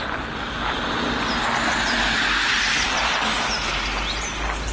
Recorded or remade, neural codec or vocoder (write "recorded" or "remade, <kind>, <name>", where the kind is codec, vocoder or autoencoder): recorded